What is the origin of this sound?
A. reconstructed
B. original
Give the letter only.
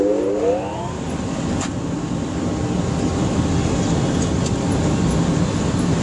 B